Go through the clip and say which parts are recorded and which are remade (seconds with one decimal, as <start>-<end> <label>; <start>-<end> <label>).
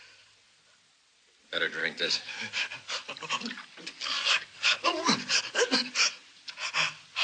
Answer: 0.0-1.8 recorded; 1.8-6.1 remade; 6.1-7.2 recorded